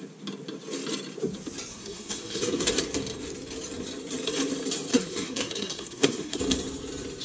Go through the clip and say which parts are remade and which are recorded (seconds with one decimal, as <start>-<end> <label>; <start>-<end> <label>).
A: 0.0-1.7 recorded; 1.7-2.7 remade; 2.7-4.9 recorded; 4.9-6.4 remade; 6.4-7.2 recorded